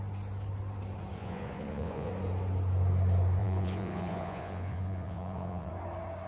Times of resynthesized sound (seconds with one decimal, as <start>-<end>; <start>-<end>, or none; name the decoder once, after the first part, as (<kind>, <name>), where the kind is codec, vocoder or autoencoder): 1.2-2.1 (vocoder, Vocos); 3.4-5.7